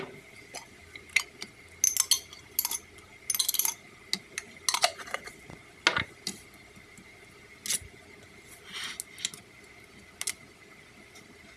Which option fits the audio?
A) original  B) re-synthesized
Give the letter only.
A